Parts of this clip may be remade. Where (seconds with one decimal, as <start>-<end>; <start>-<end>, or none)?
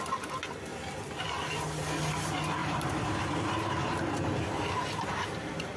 0.7-1.5; 2.6-5.8